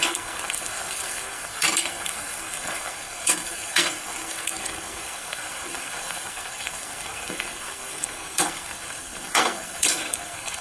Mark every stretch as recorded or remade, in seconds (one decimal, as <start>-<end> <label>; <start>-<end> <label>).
0.0-10.6 remade

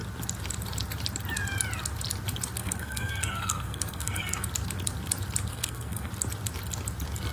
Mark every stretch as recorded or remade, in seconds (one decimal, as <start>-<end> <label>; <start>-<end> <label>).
0.0-2.6 recorded; 2.6-4.5 remade; 4.5-5.5 recorded; 5.5-6.1 remade; 6.1-7.3 recorded

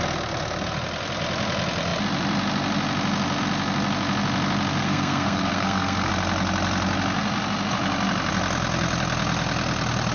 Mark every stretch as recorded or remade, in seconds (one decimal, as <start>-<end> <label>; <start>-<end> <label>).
0.0-4.8 recorded; 4.8-6.1 remade; 6.1-10.1 recorded

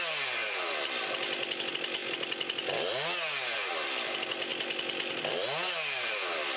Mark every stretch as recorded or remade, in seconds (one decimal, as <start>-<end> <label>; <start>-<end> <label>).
0.0-6.6 recorded

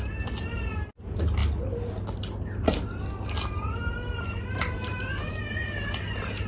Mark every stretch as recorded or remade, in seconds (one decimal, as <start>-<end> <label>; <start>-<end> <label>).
0.0-6.5 recorded

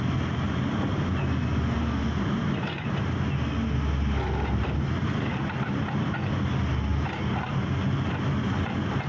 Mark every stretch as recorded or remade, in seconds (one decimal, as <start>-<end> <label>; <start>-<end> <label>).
0.0-9.1 recorded

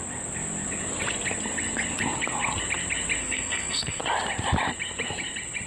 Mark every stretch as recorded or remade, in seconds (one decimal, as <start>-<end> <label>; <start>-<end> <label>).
0.0-3.2 recorded; 3.2-4.0 remade; 4.0-5.7 recorded

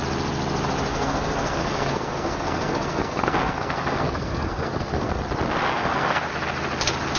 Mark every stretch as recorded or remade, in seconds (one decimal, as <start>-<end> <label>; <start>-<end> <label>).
0.0-0.9 recorded; 0.9-5.2 remade; 5.2-5.7 recorded; 5.7-6.3 remade; 6.3-7.2 recorded